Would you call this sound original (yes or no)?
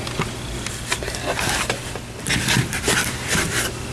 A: yes